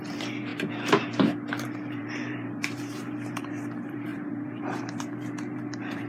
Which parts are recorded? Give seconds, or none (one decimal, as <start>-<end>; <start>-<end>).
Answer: 0.5-1.5